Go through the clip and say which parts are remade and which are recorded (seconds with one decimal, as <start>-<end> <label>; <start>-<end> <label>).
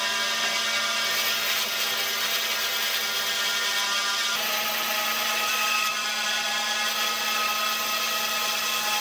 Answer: 0.0-5.5 recorded; 5.5-6.5 remade; 6.5-9.0 recorded